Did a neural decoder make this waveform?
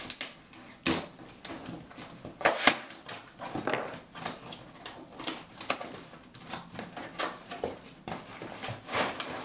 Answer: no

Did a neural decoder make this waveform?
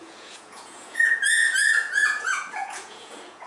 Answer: yes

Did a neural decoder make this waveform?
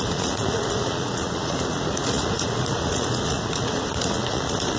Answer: yes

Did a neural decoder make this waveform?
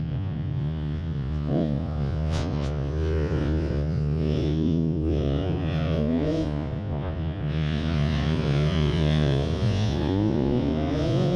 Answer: yes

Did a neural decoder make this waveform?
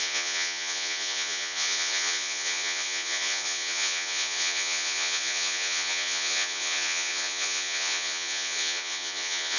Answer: yes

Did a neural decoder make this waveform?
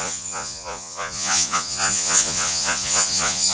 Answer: yes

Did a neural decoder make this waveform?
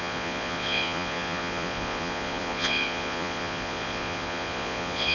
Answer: yes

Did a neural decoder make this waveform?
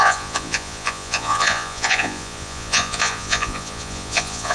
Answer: yes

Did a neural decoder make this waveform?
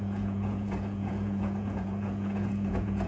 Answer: yes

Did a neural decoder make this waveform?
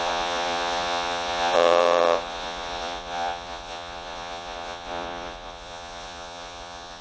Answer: yes